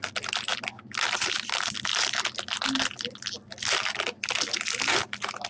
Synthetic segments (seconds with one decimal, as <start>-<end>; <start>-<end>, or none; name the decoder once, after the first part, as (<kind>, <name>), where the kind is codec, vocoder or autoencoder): none